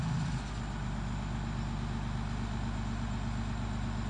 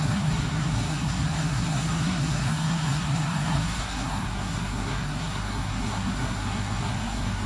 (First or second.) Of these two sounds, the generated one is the second